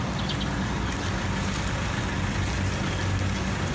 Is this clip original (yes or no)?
yes